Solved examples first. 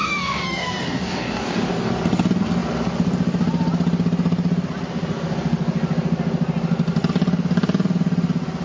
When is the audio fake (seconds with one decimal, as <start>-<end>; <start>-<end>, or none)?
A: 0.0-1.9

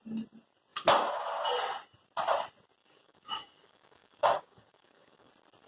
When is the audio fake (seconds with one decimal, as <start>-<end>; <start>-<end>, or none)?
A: 2.8-5.3

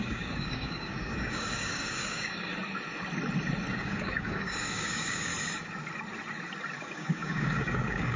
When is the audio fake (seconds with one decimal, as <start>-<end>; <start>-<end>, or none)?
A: 0.0-2.5; 3.7-5.3; 6.8-8.2

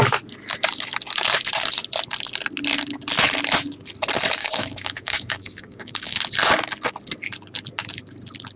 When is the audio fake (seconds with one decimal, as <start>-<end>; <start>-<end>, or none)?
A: 4.4-6.2

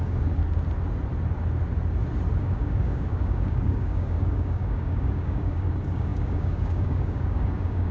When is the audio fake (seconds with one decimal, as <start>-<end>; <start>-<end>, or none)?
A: 0.0-0.4; 2.4-7.9

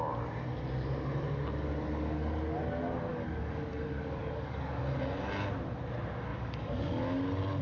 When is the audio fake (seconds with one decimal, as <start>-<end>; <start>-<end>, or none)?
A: 3.1-4.8; 6.3-6.9

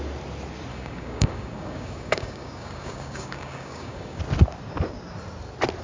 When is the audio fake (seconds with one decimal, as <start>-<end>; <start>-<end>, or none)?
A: 0.7-4.2